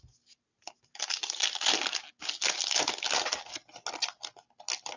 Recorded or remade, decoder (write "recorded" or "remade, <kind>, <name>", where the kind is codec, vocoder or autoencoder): recorded